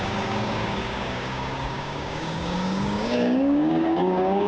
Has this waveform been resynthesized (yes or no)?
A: yes